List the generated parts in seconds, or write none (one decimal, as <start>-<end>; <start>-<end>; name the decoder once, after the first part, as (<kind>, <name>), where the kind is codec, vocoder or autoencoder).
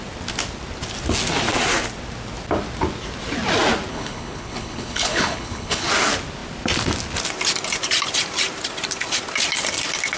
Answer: 3.9-5.8 (codec, HILCodec)